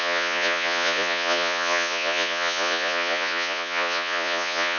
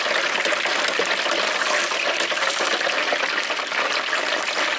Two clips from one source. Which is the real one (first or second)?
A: second